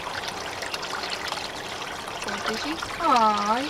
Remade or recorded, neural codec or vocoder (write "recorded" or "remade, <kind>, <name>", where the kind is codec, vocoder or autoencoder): recorded